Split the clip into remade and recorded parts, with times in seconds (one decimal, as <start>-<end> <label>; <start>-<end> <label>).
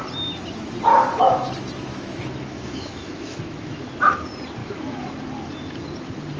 0.0-0.9 recorded; 0.9-1.5 remade; 1.5-1.9 recorded; 1.9-3.8 remade; 3.8-4.6 recorded; 4.6-5.1 remade; 5.1-6.4 recorded